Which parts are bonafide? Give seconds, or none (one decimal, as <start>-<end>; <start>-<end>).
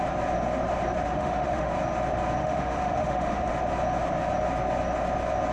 0.0-1.0; 1.7-2.4; 3.5-5.5